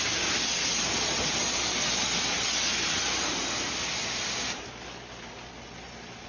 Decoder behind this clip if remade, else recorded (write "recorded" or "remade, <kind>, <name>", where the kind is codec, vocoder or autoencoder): recorded